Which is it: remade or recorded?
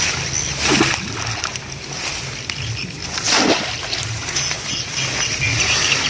recorded